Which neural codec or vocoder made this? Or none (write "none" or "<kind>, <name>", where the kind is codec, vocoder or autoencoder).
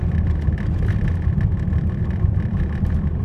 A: vocoder, BigVGAN v2